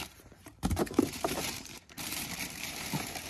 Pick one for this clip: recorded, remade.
remade